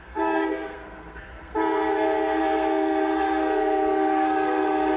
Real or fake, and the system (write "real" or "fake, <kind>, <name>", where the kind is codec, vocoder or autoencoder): fake, codec, SNAC